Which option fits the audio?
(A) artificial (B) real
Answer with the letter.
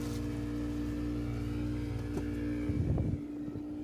B